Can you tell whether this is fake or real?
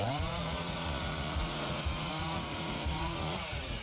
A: fake